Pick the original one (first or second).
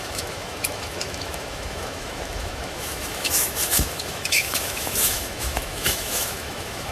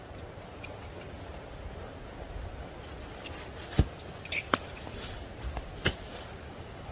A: second